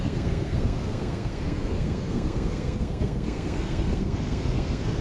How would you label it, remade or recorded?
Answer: remade